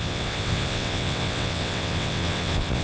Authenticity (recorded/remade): remade